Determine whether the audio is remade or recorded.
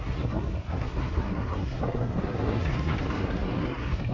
remade